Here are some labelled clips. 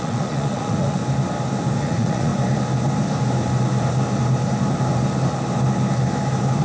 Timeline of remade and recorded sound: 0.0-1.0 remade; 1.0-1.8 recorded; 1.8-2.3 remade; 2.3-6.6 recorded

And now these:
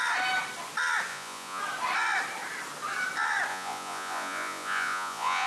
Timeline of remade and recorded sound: 0.0-1.1 recorded; 1.1-1.6 remade; 1.6-3.5 recorded; 3.5-5.5 remade

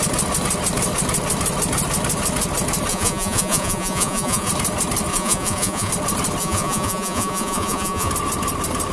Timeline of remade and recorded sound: 0.0-2.9 recorded; 2.9-4.5 remade; 4.5-5.1 recorded; 5.1-5.9 remade; 5.9-6.4 recorded; 6.4-8.1 remade; 8.1-8.9 recorded

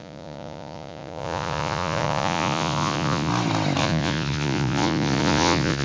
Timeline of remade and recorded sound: 0.0-3.3 remade; 3.3-3.8 recorded; 3.8-5.8 remade

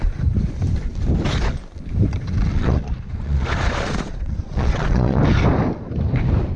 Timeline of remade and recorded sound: 0.0-2.5 recorded; 2.5-5.2 remade; 5.2-6.6 recorded

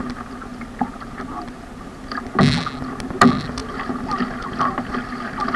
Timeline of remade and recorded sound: 0.0-5.6 recorded